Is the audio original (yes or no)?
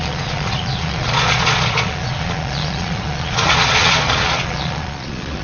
no